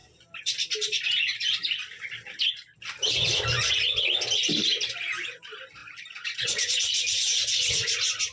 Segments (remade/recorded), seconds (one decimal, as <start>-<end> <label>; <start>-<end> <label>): 0.0-8.3 recorded